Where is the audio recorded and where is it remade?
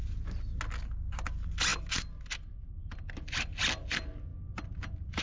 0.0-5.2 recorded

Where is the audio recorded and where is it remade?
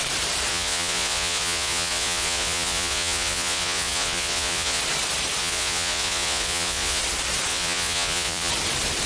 0.0-0.5 recorded; 0.5-4.8 remade; 4.8-5.4 recorded; 5.4-7.0 remade; 7.0-7.5 recorded; 7.5-8.5 remade; 8.5-9.1 recorded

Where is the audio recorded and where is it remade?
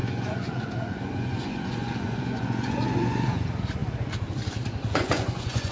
0.0-3.8 remade; 3.8-4.9 recorded; 4.9-5.7 remade